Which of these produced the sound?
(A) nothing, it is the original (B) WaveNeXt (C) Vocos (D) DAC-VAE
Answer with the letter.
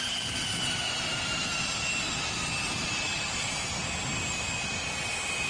A